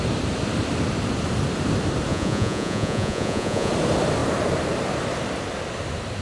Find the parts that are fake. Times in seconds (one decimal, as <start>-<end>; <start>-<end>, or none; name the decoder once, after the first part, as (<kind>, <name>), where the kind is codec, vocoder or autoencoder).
2.1-3.7 (vocoder, Vocos)